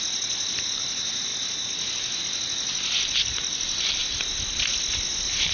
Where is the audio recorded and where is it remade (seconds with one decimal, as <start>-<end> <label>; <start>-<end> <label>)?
0.0-5.5 recorded